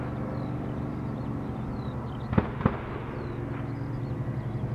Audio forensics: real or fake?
real